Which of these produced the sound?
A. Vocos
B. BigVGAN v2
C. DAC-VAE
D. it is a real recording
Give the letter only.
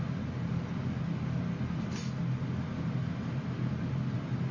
D